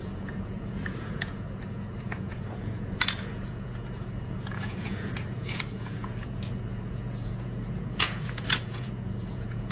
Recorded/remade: remade